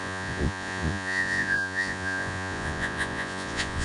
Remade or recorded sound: remade